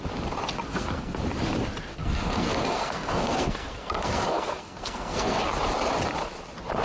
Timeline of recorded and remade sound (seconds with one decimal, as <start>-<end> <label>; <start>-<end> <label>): 0.0-0.7 recorded; 0.7-1.2 remade; 1.2-1.9 recorded; 1.9-5.4 remade; 5.4-6.8 recorded